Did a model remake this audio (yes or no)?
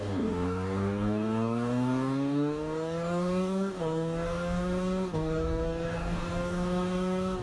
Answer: yes